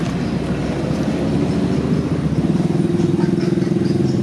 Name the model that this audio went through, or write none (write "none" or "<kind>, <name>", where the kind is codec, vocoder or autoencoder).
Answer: none